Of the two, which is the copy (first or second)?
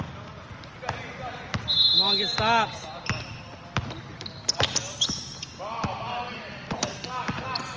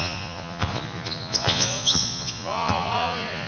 second